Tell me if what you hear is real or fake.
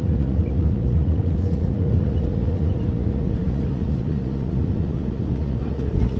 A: fake